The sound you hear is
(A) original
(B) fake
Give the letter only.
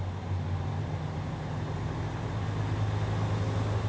A